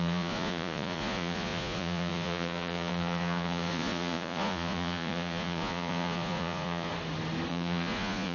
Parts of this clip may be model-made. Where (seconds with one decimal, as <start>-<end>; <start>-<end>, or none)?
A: 0.0-6.9; 7.5-8.3